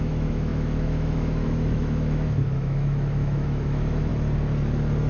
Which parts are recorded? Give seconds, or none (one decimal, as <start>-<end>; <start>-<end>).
4.1-5.1